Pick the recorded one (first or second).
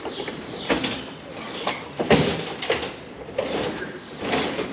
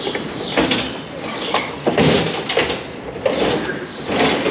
second